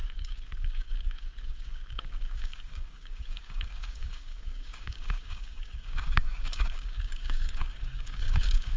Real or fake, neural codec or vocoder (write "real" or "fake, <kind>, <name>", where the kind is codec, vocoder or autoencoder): fake, codec, DAC